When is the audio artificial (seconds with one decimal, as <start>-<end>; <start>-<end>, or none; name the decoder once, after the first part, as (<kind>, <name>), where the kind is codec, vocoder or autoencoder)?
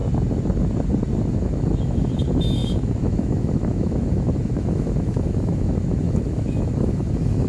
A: 1.3-7.5 (autoencoder, DAC-VAE)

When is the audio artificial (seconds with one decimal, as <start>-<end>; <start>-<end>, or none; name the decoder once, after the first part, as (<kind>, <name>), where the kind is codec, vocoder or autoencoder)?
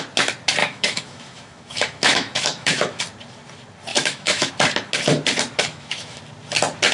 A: 0.6-3.0 (autoencoder, DAC-VAE); 3.9-4.5; 5.7-6.2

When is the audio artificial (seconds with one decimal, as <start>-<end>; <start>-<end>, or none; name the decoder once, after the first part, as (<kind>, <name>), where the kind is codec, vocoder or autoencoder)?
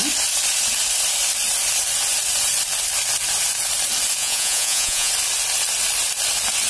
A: 4.2-5.1 (vocoder, Vocos)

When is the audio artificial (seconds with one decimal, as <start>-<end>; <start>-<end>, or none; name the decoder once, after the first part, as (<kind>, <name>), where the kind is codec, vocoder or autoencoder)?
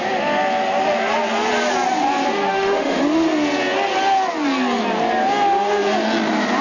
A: 2.5-3.0 (autoencoder, DAC-VAE)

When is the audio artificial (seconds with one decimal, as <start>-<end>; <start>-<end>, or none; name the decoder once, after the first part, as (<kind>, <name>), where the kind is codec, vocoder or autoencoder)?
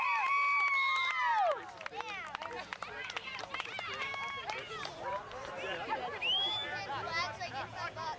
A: none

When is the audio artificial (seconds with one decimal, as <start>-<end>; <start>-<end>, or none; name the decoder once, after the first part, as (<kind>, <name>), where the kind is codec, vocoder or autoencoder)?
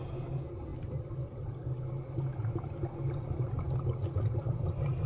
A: none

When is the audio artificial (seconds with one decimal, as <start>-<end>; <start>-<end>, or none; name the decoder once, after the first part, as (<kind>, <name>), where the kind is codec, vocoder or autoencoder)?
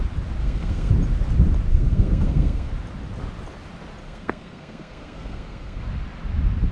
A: 0.4-0.9 (codec, SNAC); 1.7-2.7; 4.0-5.8